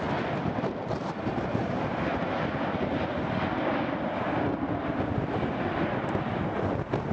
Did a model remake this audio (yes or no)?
yes